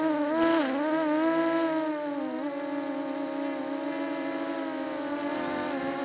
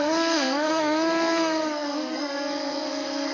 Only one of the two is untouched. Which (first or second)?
first